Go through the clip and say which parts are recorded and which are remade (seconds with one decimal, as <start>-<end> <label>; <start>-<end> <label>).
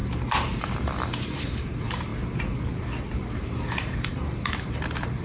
0.0-0.6 recorded; 0.6-2.1 remade; 2.1-2.7 recorded; 2.7-5.2 remade